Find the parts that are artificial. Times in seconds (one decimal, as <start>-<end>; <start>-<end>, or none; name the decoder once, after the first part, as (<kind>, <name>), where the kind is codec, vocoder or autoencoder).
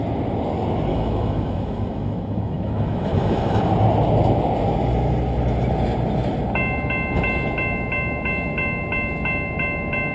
0.9-3.6 (autoencoder, DAC-VAE)